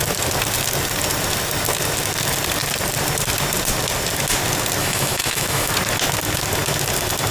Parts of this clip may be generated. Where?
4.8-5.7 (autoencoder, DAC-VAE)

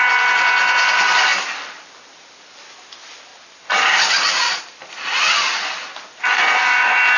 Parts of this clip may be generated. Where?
none

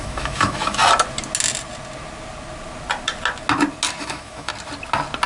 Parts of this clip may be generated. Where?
0.0-0.8 (autoencoder, DAC-VAE); 4.0-4.5

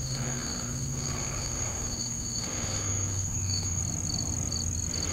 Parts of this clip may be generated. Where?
0.0-3.8 (autoencoder, DAC-VAE)

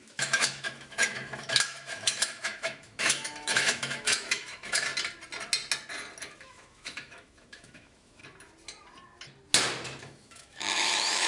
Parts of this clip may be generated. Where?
0.0-4.9 (autoencoder, DAC-VAE); 6.3-8.2; 10.0-11.3